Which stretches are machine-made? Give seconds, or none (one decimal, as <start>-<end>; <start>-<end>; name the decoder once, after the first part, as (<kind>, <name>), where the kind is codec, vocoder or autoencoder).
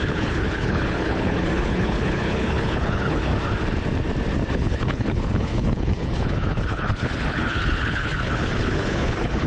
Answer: 0.0-3.3 (codec, HILCodec); 4.5-9.5